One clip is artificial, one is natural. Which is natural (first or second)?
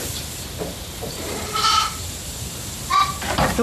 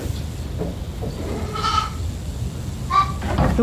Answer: second